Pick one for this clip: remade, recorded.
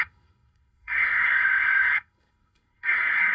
remade